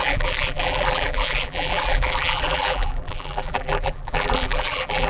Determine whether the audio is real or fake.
fake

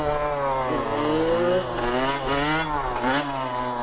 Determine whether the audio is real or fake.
real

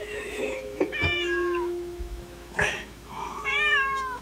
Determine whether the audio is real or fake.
fake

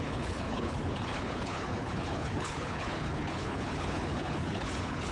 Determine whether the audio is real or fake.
fake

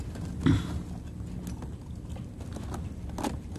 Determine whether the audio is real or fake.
real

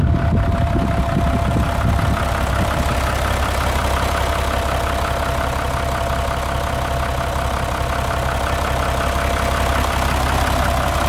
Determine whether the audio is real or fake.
real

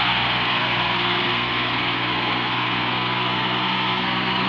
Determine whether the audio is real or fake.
fake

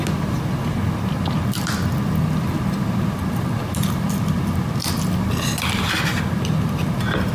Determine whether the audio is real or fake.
real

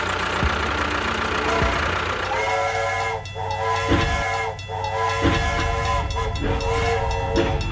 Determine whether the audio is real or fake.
real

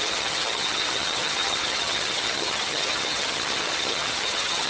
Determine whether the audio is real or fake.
fake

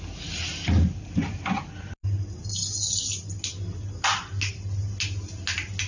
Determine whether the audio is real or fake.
real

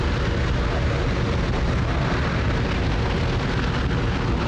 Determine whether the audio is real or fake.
real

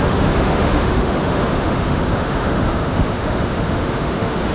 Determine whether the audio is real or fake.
fake